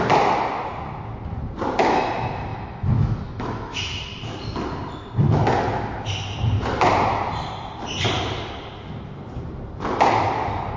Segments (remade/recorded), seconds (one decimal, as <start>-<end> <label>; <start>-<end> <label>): 0.0-2.5 recorded; 2.5-4.0 remade; 4.0-10.8 recorded

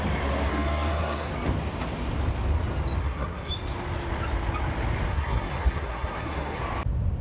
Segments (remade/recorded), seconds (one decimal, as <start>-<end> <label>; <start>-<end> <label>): 0.0-0.5 recorded; 0.5-1.3 remade; 1.3-3.0 recorded; 3.0-3.5 remade; 3.5-5.1 recorded; 5.1-6.6 remade; 6.6-7.2 recorded

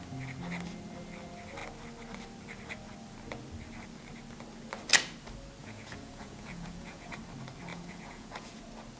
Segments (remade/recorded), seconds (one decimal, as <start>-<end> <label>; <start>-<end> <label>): 0.0-5.6 recorded; 5.6-7.2 remade; 7.2-7.7 recorded; 7.7-8.6 remade; 8.6-9.0 recorded

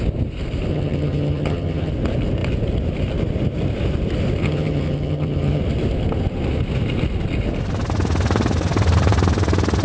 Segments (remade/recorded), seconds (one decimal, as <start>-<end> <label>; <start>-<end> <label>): 0.0-0.7 recorded; 0.7-1.9 remade; 1.9-4.4 recorded; 4.4-5.6 remade; 5.6-9.8 recorded

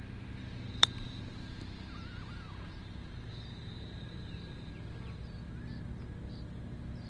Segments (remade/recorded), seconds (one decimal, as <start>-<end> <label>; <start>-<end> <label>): 0.0-0.7 recorded; 0.7-1.2 remade; 1.2-3.3 recorded; 3.3-4.7 remade; 4.7-7.1 recorded

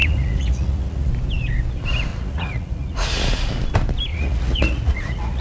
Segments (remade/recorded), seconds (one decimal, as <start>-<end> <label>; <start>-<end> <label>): 0.0-1.1 remade; 1.1-2.1 recorded; 2.1-3.5 remade; 3.5-4.1 recorded; 4.1-5.4 remade

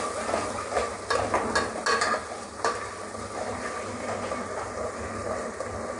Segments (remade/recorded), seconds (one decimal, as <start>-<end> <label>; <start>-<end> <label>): 0.0-2.2 recorded; 2.2-2.9 remade; 2.9-6.0 recorded

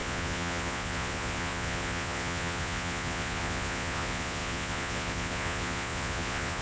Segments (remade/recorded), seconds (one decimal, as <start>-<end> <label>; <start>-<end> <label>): 0.0-6.6 remade